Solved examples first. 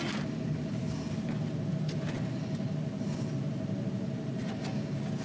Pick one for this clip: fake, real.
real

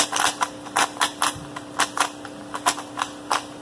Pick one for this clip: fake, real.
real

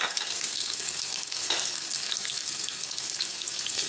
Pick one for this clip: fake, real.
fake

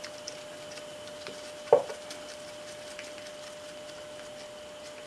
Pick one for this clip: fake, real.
real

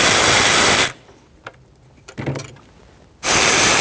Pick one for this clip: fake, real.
real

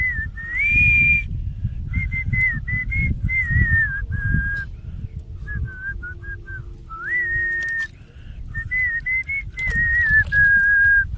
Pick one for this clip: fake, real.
real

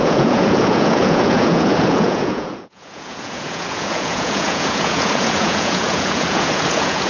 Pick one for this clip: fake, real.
fake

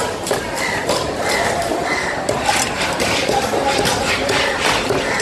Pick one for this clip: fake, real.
real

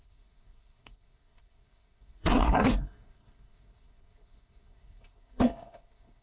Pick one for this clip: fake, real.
fake